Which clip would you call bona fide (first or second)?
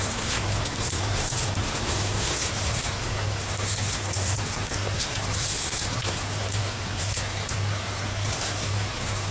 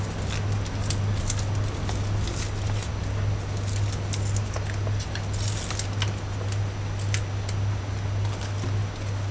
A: second